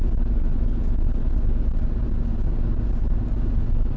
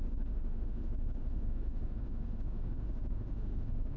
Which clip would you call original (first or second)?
first